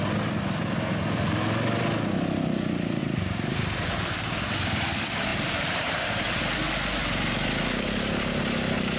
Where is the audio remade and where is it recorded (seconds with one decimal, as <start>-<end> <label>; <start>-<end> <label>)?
0.0-3.0 recorded; 3.0-4.1 remade; 4.1-5.3 recorded; 5.3-6.4 remade; 6.4-9.0 recorded

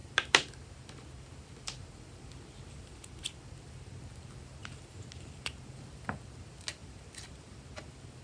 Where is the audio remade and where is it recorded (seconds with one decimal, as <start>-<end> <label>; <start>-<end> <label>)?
0.0-8.2 recorded

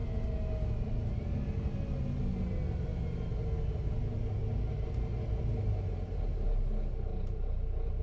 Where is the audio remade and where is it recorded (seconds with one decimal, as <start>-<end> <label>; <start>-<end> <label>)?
0.0-7.1 recorded; 7.1-8.0 remade

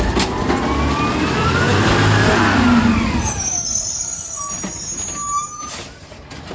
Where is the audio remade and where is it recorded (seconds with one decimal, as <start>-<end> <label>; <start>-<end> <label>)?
0.0-3.7 recorded; 3.7-4.4 remade; 4.4-6.5 recorded